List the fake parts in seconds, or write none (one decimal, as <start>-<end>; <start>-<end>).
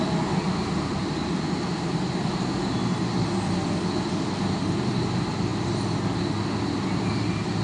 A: none